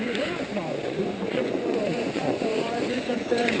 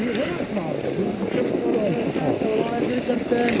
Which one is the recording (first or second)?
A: second